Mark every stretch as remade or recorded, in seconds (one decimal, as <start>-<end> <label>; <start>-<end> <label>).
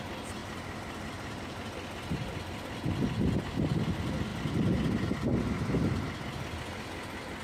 0.0-0.4 recorded; 0.4-1.6 remade; 1.6-7.4 recorded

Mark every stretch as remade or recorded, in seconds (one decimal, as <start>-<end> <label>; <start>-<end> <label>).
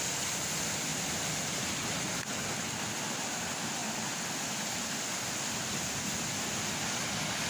0.0-0.9 recorded; 0.9-2.0 remade; 2.0-7.5 recorded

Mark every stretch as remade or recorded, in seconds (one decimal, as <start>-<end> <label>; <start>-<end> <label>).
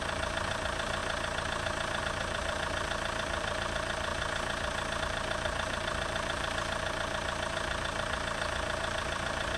0.0-1.0 remade; 1.0-2.0 recorded; 2.0-4.1 remade; 4.1-5.0 recorded; 5.0-9.6 remade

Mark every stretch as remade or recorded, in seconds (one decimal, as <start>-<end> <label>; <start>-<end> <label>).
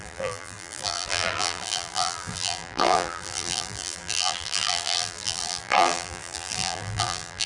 0.0-7.5 remade